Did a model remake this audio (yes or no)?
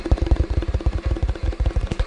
no